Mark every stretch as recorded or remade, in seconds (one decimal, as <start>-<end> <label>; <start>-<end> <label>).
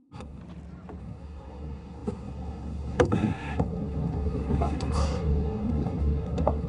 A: 0.0-0.4 remade; 0.4-1.0 recorded; 1.0-6.7 remade